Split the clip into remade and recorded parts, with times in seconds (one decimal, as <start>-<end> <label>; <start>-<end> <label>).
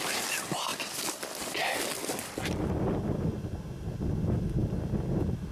0.0-5.5 recorded